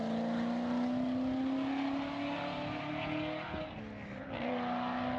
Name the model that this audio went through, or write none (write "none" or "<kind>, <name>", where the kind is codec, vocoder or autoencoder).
none